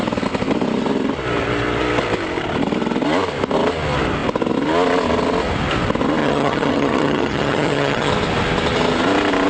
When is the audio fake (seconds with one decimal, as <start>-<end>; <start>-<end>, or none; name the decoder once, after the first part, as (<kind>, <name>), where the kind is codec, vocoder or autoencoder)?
6.2-8.1 (vocoder, HiFi-GAN)